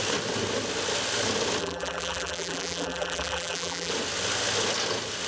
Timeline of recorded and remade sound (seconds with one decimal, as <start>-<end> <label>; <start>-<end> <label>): 0.0-1.6 recorded; 1.6-3.9 remade; 3.9-5.3 recorded